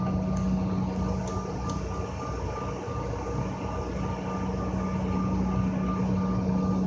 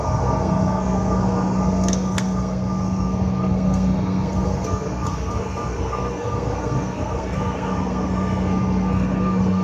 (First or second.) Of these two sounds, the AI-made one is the second